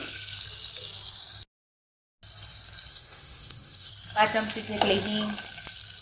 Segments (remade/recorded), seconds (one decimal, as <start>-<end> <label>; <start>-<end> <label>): 0.0-2.9 recorded; 2.9-3.9 remade; 3.9-6.0 recorded

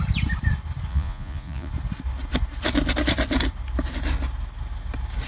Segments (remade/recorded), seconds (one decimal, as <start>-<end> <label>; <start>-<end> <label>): 0.0-0.9 recorded; 0.9-1.7 remade; 1.7-5.3 recorded